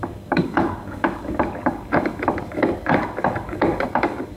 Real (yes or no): no